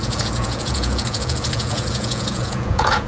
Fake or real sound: fake